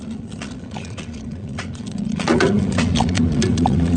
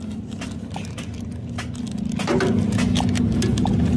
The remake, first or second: first